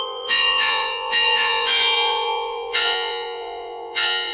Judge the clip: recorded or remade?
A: remade